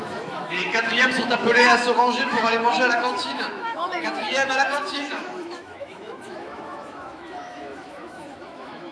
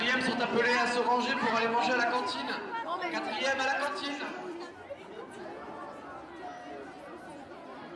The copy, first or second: first